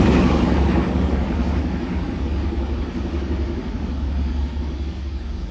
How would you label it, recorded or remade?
remade